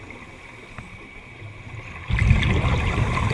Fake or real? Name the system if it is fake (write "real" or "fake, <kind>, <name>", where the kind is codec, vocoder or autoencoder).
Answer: real